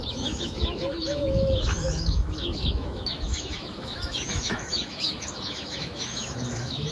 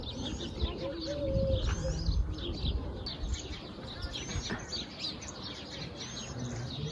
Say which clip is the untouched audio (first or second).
second